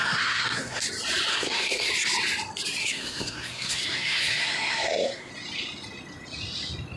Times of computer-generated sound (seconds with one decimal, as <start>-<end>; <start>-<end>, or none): 0.0-0.8; 1.3-1.9; 2.8-5.3